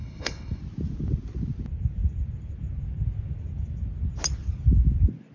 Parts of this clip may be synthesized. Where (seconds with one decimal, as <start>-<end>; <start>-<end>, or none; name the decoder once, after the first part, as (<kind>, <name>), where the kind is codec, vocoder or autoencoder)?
0.0-0.6 (codec, HILCodec)